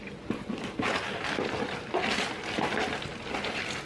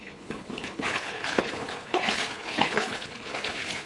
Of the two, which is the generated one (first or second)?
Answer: second